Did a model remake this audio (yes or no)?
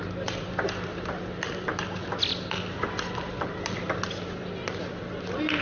no